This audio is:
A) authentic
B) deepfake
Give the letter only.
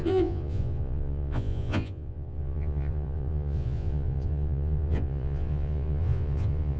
B